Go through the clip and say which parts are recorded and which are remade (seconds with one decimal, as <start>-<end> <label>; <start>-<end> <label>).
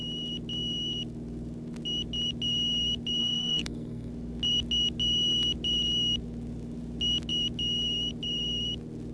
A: 0.0-3.2 recorded; 3.2-4.1 remade; 4.1-9.1 recorded